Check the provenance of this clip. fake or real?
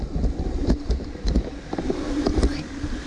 real